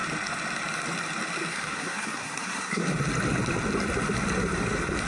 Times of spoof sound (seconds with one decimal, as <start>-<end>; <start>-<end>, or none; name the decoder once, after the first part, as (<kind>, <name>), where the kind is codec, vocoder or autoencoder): 1.5-2.8 (codec, SNAC)